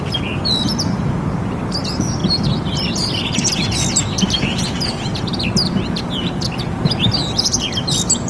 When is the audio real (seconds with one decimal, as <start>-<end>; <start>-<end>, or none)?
none